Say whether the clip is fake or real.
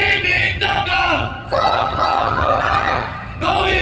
fake